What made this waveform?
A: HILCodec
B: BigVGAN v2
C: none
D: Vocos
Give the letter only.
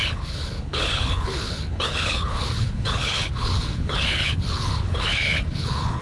A